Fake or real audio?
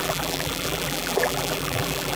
fake